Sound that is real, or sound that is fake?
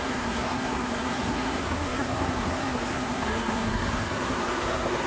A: fake